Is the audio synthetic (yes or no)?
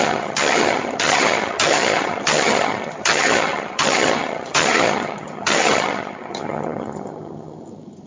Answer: yes